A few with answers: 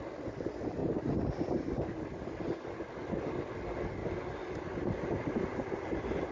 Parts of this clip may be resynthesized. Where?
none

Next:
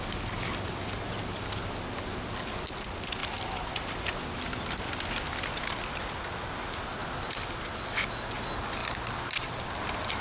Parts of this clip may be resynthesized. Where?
7.0-7.5 (vocoder, BigVGAN v2); 8.8-10.2

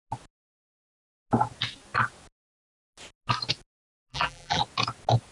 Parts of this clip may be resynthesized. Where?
4.1-4.6 (vocoder, BigVGAN v2)

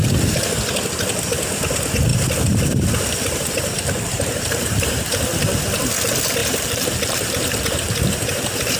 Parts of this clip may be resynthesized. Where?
2.1-5.2 (vocoder, BigVGAN v2); 6.4-8.8

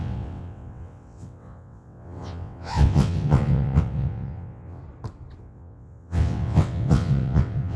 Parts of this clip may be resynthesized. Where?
0.0-4.8 (vocoder, WaveNeXt); 5.4-7.8